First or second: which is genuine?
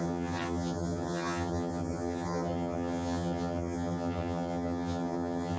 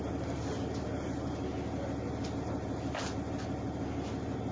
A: second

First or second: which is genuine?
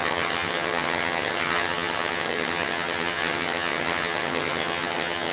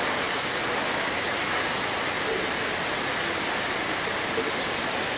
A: second